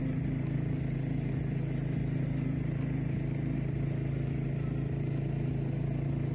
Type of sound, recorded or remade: recorded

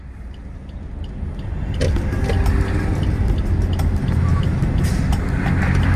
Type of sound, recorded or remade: recorded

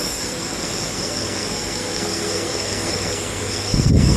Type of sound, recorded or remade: remade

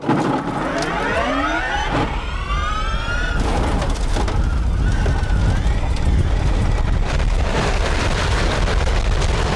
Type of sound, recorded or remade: recorded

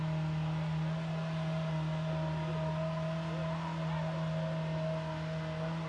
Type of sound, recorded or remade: recorded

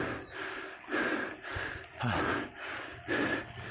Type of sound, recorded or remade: recorded